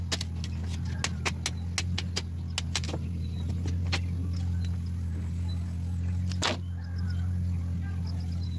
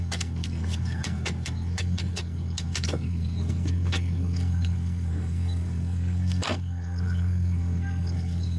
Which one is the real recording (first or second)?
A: first